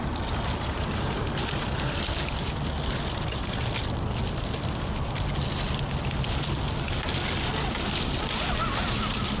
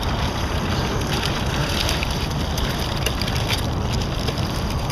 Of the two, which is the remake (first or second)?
second